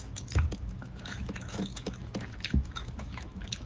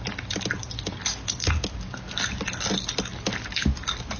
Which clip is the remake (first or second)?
first